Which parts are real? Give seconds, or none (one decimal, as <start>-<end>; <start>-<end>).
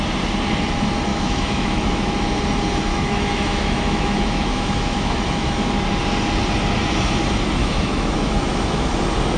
0.0-1.1; 2.4-2.9; 5.7-7.6; 8.9-9.4